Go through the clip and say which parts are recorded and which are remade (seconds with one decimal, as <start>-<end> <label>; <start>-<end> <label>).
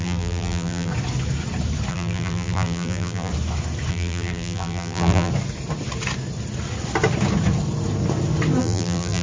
0.0-0.9 remade; 0.9-1.9 recorded; 1.9-3.3 remade; 3.3-3.9 recorded; 3.9-5.3 remade; 5.3-8.6 recorded; 8.6-9.2 remade